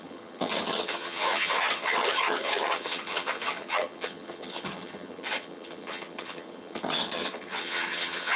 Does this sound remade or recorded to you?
remade